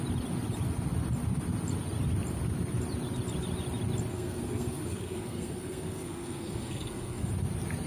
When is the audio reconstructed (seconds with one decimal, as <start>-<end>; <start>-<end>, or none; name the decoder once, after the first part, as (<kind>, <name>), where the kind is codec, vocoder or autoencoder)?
4.1-7.3 (codec, SNAC)